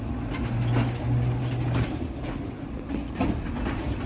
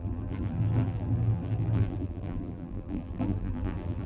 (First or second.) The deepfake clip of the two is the second